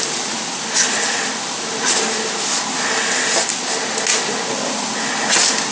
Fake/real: real